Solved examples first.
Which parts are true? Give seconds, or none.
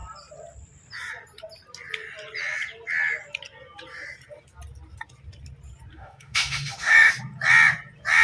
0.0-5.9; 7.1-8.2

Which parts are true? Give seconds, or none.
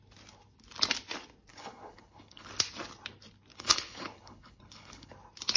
0.0-1.5; 2.5-3.5; 5.1-5.6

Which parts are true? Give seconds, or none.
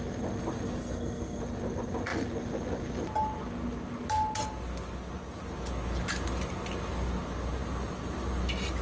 0.0-0.8; 1.4-8.8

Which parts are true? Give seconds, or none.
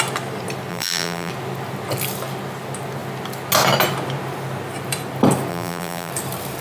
0.0-0.7; 1.3-5.5; 6.1-6.6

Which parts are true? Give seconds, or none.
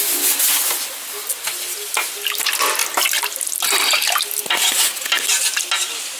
0.0-6.2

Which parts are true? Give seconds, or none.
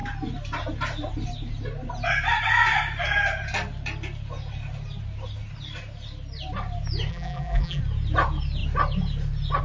0.0-7.1; 7.8-9.6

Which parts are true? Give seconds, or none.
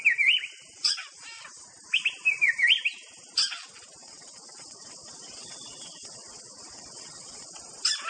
0.0-4.0; 7.5-8.1